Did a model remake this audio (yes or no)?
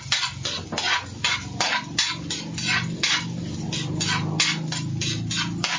no